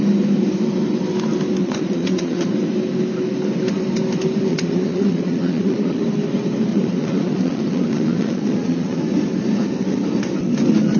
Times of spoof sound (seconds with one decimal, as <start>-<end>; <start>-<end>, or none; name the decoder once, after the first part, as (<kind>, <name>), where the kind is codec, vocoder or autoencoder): 1.6-2.5 (vocoder, Vocos); 4.5-6.0; 6.7-9.0